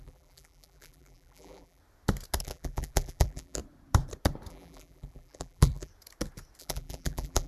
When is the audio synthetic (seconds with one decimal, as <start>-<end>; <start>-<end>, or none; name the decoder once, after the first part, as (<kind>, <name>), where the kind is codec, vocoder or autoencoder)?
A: 0.0-1.8 (vocoder, BigVGAN v2); 2.4-3.6; 4.5-5.9; 6.6-7.5